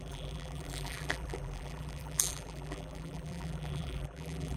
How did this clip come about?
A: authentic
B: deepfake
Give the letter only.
B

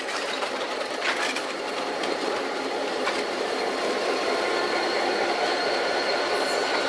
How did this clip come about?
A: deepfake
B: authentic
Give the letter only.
A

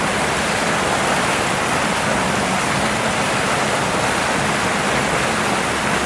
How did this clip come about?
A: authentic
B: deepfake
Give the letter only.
A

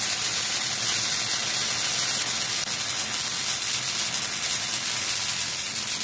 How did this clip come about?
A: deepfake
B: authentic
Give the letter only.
B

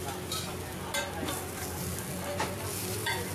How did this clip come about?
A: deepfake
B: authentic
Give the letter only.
B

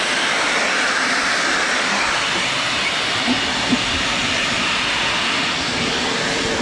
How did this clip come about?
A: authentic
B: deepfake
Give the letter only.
B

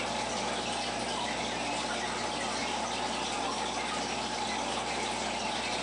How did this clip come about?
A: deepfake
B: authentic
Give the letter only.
B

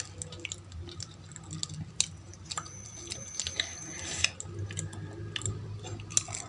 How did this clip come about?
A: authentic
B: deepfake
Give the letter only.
A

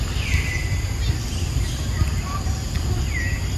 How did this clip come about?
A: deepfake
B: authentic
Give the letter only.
A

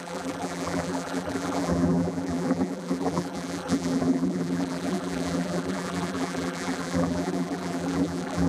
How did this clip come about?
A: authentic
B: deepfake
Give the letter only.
B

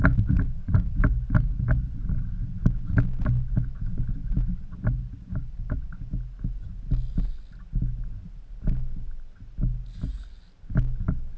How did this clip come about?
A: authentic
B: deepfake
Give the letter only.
A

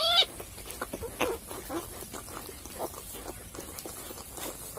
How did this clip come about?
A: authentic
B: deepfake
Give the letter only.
A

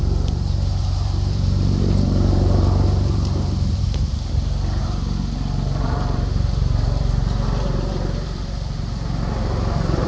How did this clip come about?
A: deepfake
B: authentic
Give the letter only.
A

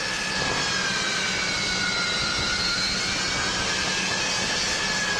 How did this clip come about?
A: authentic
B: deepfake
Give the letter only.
A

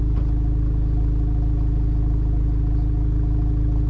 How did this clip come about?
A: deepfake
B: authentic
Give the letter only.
B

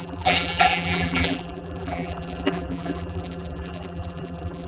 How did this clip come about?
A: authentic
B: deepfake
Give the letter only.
B